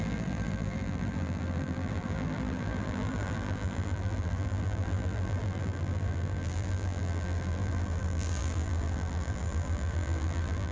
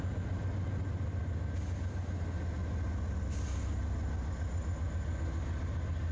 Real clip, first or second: second